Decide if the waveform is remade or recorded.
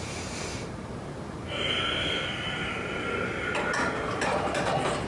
recorded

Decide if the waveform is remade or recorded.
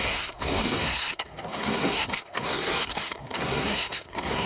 remade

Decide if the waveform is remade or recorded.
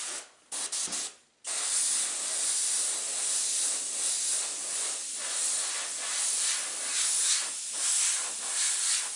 recorded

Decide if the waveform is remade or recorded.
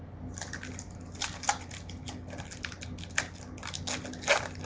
recorded